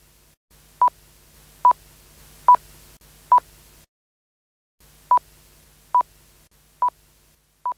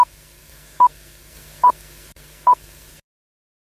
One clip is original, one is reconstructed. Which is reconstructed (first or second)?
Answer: second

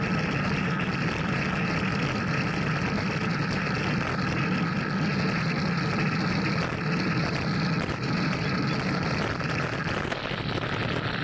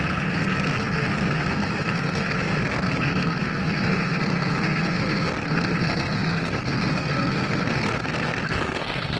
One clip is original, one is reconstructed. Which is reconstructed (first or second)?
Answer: second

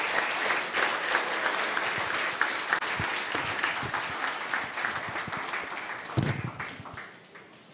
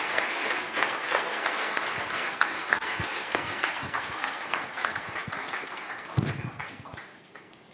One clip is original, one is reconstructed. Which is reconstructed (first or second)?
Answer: second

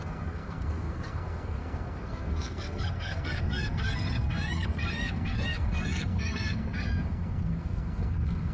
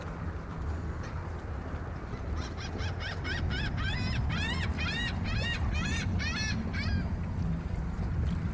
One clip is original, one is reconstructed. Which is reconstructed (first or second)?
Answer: first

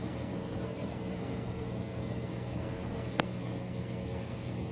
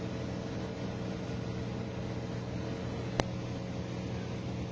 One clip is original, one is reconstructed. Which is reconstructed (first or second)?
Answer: first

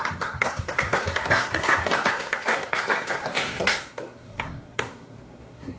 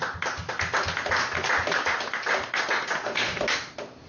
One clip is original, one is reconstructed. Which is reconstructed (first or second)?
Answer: first